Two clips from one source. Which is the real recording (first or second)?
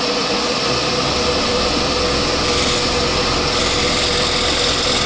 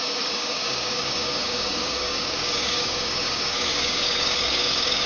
first